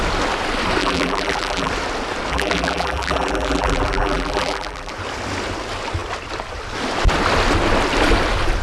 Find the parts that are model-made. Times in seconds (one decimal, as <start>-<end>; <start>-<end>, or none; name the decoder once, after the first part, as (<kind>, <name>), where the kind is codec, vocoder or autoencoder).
0.8-1.7 (vocoder, BigVGAN v2); 2.3-4.9